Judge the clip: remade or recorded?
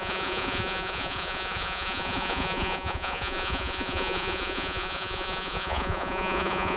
remade